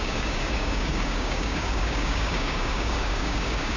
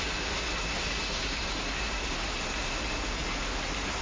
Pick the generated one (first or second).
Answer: first